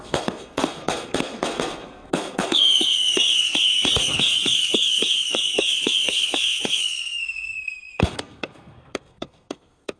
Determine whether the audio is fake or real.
fake